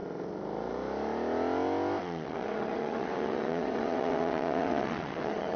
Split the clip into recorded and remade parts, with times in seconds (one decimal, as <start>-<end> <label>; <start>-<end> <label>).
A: 0.0-2.0 recorded; 2.0-5.6 remade